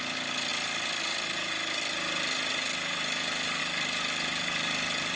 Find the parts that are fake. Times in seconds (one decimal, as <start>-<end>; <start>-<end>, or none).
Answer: none